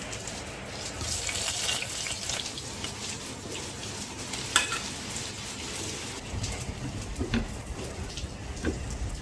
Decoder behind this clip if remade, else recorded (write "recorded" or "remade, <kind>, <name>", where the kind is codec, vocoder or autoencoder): recorded